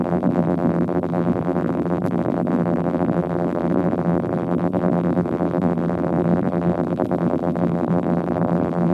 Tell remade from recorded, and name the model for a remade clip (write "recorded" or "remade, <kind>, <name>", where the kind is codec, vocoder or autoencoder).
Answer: remade, vocoder, BigVGAN v2